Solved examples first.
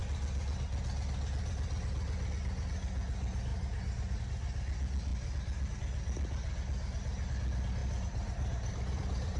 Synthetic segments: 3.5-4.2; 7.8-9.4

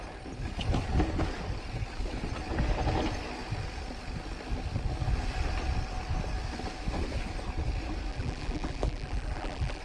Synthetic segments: 8.1-9.8

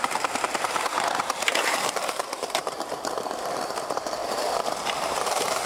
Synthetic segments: 0.0-5.7

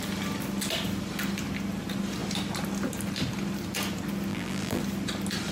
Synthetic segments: 4.3-4.8

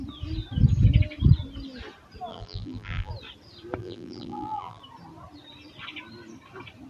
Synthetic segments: 2.3-3.1; 3.8-4.8

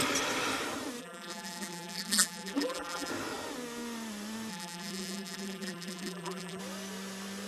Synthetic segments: 1.0-3.1; 4.5-6.6